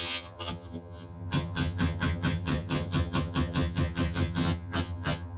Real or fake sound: fake